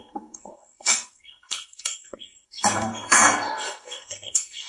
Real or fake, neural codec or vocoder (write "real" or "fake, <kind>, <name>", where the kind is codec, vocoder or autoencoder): fake, codec, SNAC